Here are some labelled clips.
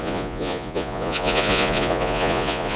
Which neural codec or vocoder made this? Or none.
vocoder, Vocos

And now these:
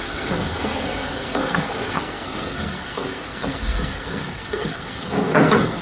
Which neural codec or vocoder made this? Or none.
codec, SNAC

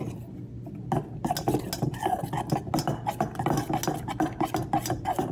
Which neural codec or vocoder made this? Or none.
none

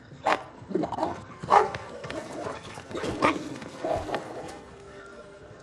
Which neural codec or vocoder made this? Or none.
codec, SNAC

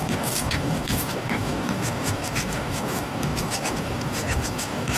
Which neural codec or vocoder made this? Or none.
codec, DAC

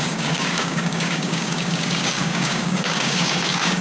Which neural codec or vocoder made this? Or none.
codec, DAC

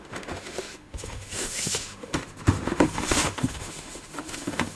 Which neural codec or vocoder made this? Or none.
autoencoder, DAC-VAE